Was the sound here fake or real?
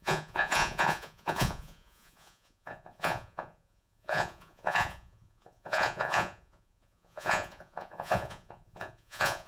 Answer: fake